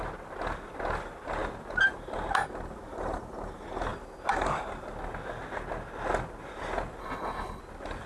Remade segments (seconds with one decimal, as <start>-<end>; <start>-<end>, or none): 7.0-7.6